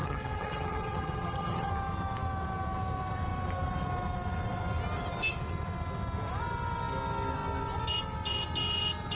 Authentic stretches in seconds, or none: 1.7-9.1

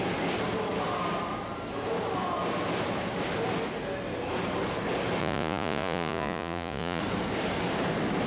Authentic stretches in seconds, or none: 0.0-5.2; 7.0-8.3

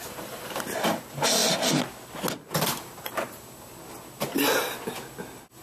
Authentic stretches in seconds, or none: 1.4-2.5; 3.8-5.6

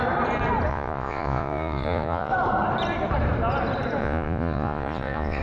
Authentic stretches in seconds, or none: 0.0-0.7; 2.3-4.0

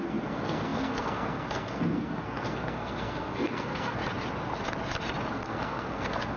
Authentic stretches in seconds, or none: 4.0-5.3

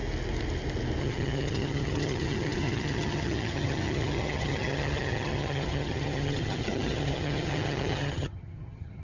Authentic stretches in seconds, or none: 0.0-1.0

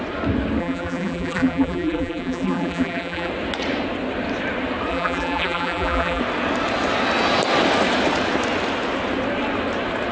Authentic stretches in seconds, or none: 0.0-0.6; 3.3-4.9; 6.2-10.1

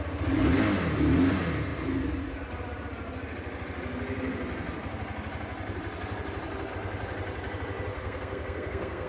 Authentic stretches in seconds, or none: 0.0-7.9